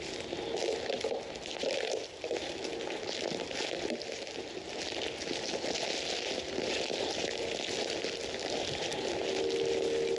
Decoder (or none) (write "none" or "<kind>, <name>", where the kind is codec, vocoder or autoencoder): none